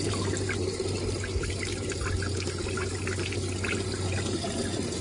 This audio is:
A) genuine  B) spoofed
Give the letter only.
A